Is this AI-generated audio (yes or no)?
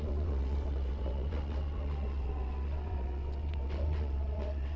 yes